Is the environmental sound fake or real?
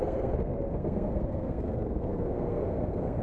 fake